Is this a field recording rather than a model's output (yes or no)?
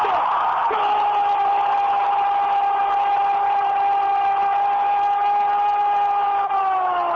yes